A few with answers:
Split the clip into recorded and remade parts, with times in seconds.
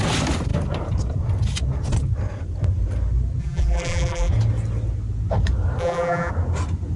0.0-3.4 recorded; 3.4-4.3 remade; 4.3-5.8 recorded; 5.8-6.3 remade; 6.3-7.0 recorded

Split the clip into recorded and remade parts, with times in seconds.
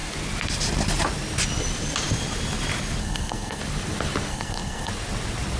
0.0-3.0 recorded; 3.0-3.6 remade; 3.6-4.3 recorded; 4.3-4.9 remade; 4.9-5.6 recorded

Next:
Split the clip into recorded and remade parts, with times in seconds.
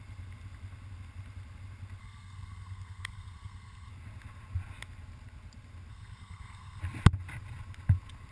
0.0-2.0 recorded; 2.0-3.9 remade; 3.9-5.9 recorded; 5.9-6.8 remade; 6.8-8.3 recorded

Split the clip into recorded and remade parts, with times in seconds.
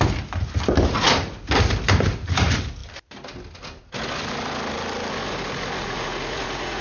0.0-5.8 recorded; 5.8-6.8 remade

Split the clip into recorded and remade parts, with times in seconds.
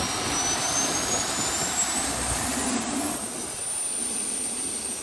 0.0-0.6 recorded; 0.6-3.6 remade; 3.6-4.0 recorded; 4.0-5.0 remade